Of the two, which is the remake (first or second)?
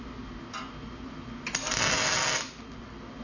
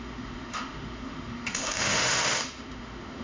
second